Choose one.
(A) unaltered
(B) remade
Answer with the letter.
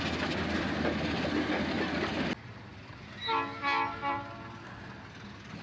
A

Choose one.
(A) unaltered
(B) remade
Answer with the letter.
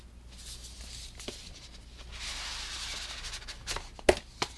A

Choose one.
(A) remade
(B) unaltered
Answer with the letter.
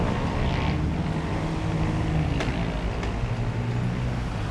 B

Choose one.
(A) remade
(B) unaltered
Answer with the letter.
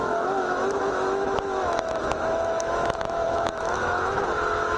A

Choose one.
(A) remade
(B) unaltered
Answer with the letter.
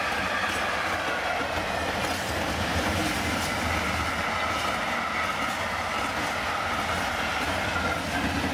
B